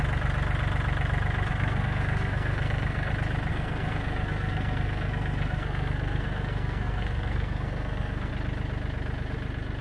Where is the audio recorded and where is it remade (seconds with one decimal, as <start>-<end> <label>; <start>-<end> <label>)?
0.0-1.5 recorded; 1.5-3.1 remade; 3.1-3.5 recorded; 3.5-8.3 remade; 8.3-9.8 recorded